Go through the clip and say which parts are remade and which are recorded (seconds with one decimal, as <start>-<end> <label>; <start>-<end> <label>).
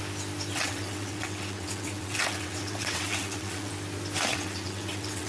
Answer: 0.0-0.5 recorded; 0.5-3.7 remade; 3.7-4.3 recorded; 4.3-5.3 remade